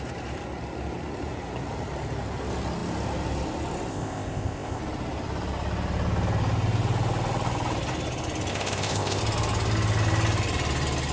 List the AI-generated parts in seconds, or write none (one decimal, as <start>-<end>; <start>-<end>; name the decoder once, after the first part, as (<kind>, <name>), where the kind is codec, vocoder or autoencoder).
3.9-4.8 (codec, ZipCodec); 8.5-9.2